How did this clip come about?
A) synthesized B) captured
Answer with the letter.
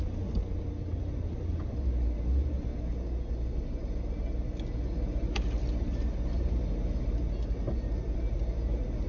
B